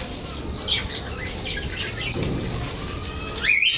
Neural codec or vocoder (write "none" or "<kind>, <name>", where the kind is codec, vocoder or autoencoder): none